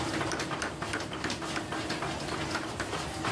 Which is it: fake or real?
real